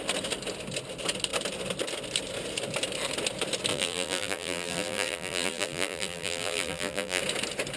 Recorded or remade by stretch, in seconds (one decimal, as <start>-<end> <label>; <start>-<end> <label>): 0.0-3.7 recorded; 3.7-7.2 remade; 7.2-7.8 recorded